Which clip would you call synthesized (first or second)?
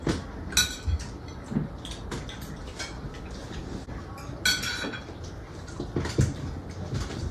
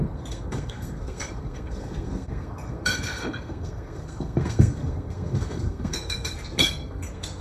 second